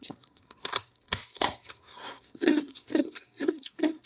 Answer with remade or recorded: remade